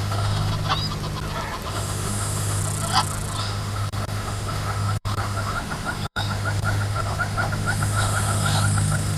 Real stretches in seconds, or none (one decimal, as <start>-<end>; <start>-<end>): 0.5-1.7; 2.6-3.4